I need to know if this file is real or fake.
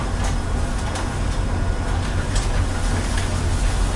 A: real